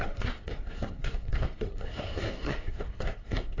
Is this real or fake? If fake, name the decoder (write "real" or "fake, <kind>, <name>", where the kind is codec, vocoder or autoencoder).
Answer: fake, codec, SNAC